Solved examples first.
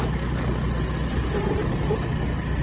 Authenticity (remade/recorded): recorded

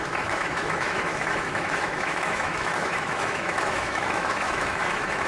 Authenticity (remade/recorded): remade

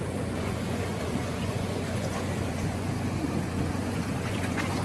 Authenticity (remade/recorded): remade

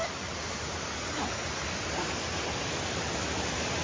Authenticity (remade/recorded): recorded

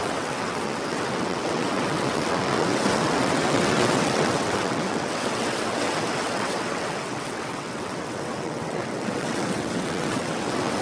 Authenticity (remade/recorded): remade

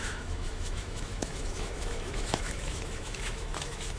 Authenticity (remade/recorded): remade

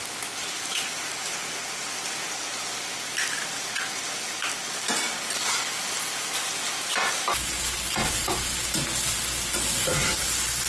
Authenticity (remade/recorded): recorded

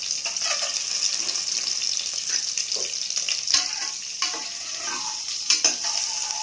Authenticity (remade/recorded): recorded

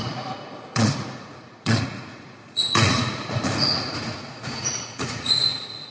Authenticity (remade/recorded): remade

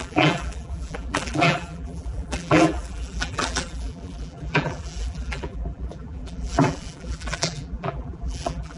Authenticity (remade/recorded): remade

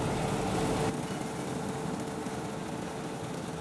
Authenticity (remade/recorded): recorded